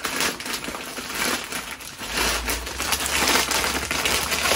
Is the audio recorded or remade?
recorded